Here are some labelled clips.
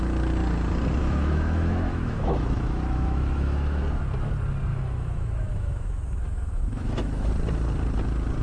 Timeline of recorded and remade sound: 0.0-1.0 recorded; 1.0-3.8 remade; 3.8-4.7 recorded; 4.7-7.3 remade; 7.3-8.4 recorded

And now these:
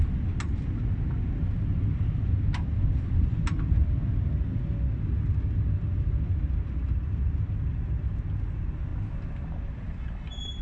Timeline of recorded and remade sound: 0.0-10.6 recorded